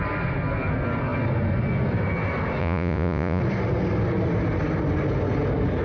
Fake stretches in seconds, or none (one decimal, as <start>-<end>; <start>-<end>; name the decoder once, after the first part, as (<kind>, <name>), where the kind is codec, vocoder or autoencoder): 2.6-3.4 (vocoder, Vocos)